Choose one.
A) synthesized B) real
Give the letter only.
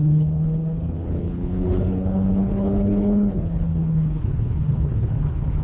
A